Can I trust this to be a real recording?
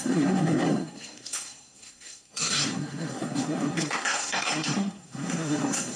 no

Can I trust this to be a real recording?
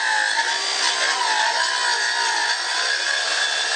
yes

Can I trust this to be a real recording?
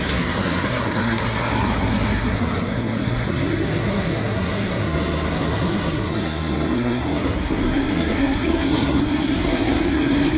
no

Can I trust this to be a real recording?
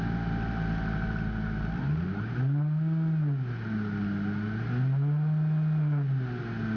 yes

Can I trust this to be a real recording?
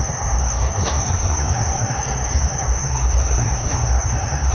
no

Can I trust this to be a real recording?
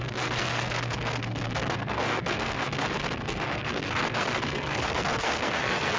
no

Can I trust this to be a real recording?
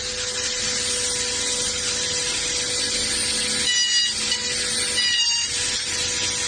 yes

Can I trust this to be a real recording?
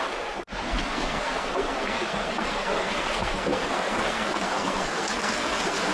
no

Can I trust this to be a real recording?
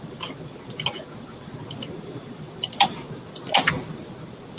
yes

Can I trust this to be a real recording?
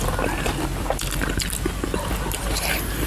yes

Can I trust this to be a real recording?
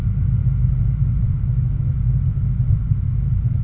yes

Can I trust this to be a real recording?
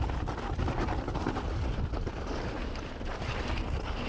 yes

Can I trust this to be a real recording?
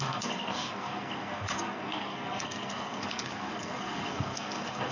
no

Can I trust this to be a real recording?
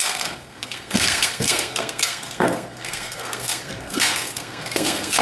no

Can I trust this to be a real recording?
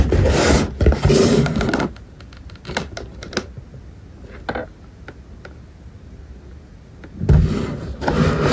yes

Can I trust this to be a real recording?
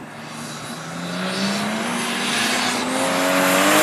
yes